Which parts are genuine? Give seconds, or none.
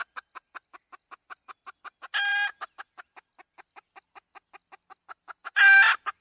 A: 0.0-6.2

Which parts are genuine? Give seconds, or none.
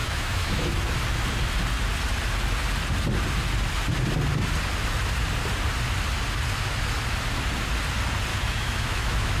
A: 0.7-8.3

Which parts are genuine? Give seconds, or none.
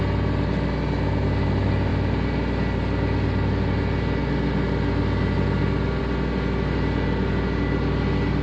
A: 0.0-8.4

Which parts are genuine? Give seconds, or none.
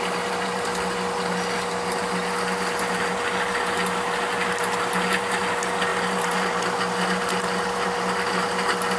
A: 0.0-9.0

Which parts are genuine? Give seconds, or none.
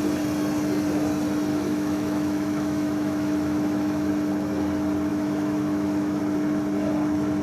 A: 0.0-1.5; 4.1-5.1; 6.2-7.4